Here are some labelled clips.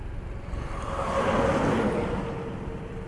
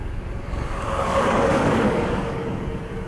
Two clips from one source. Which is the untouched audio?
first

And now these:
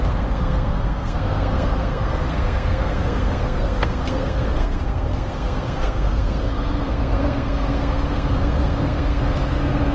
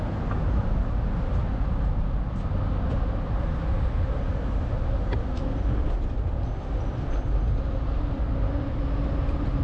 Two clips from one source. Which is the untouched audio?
second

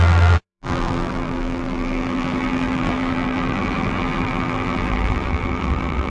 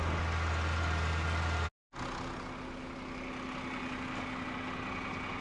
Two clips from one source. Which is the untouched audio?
second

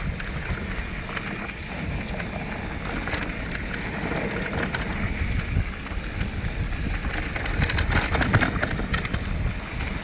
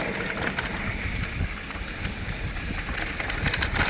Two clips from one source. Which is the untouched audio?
first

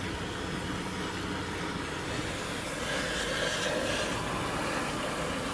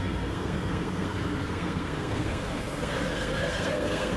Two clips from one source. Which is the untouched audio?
first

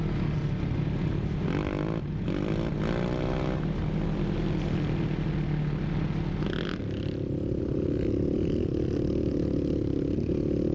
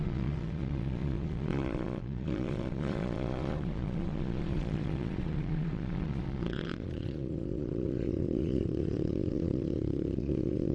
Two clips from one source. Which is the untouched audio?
first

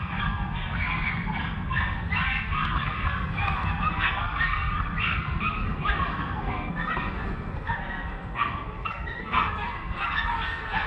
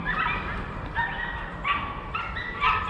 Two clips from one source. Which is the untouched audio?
second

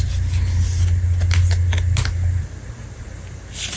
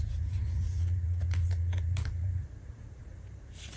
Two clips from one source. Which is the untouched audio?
first